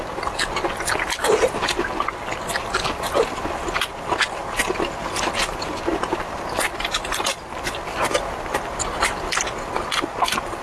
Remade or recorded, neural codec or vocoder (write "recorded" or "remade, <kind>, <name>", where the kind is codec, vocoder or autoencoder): recorded